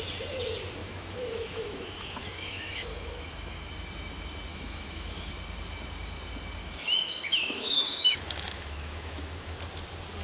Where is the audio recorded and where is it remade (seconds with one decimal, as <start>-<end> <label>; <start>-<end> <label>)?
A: 0.0-0.8 recorded; 0.8-3.7 remade; 3.7-4.5 recorded; 4.5-5.3 remade; 5.3-6.6 recorded; 6.6-9.6 remade; 9.6-10.2 recorded